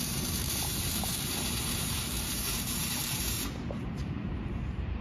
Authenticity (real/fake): fake